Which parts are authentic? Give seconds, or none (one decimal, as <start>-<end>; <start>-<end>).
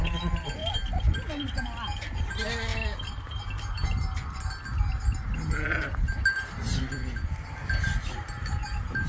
0.0-9.1